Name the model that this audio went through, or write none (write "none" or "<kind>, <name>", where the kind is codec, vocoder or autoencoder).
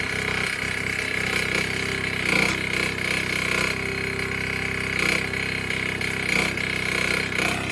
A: none